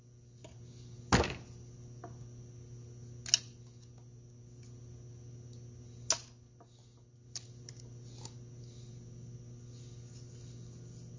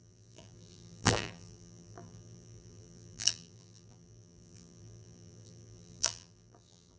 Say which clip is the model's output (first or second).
second